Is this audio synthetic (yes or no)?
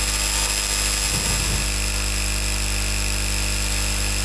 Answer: no